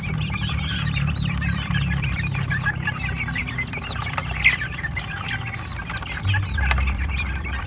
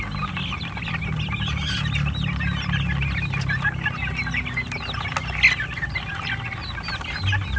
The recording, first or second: second